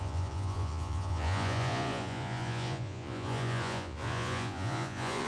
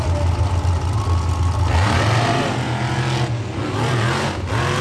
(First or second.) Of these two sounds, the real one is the second